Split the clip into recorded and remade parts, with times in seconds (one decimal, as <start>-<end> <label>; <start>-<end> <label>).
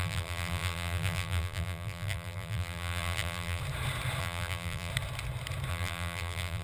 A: 0.0-3.6 remade; 3.6-4.2 recorded; 4.2-4.9 remade; 4.9-5.7 recorded; 5.7-6.6 remade